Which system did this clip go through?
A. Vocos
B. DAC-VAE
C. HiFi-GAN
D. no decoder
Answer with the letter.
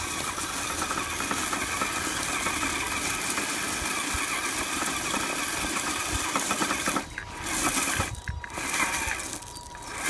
D